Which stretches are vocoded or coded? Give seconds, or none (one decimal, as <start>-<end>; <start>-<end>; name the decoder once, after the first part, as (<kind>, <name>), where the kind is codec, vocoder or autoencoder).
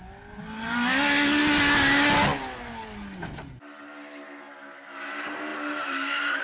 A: 5.5-6.4 (vocoder, BigVGAN v2)